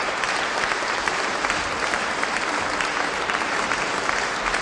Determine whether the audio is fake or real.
fake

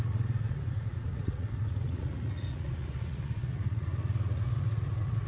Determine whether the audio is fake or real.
fake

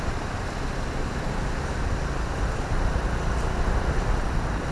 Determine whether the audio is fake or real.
real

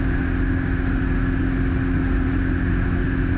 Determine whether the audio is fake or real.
real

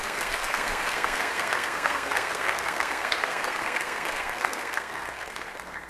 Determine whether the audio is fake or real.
fake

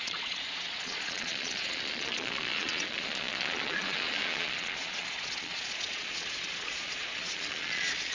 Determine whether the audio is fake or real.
fake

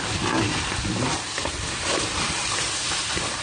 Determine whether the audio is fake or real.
real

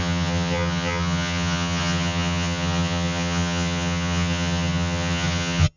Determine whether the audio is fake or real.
fake